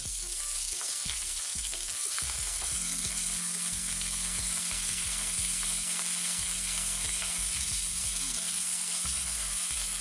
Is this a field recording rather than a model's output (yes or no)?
no